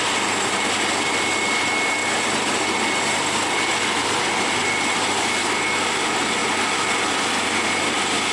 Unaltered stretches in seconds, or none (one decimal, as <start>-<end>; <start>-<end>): 0.0-2.0; 5.5-6.4; 7.9-8.3